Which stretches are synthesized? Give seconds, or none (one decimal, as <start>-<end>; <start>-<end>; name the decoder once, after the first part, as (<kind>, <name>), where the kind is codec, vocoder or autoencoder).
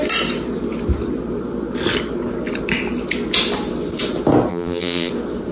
4.5-5.1 (vocoder, BigVGAN v2)